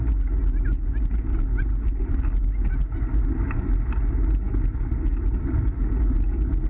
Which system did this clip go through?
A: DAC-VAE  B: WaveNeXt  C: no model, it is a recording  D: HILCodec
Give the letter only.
C